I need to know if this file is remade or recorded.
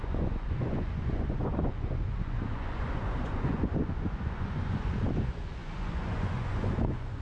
remade